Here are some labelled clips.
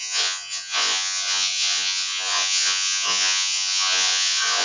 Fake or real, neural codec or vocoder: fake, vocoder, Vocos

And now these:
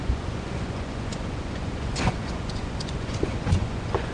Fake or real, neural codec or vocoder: fake, vocoder, Vocos